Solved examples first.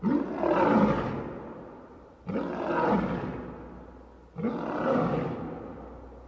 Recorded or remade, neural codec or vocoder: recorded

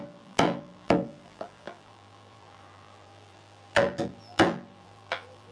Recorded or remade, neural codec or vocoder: remade, vocoder, BigVGAN v2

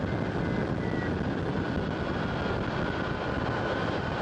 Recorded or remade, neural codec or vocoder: recorded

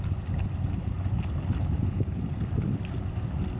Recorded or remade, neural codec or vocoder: recorded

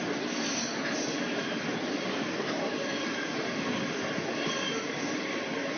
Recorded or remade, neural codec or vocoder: recorded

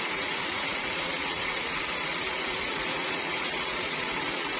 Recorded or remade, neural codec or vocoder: remade, vocoder, Vocos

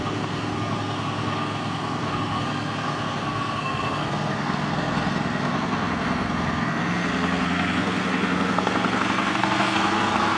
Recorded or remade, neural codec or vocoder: remade, codec, SNAC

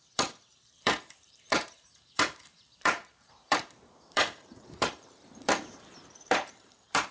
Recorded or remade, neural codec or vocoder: remade, vocoder, BigVGAN v2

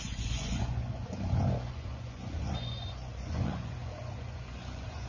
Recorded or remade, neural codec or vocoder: remade, vocoder, Vocos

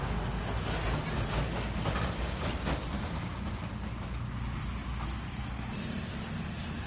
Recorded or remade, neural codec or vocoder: recorded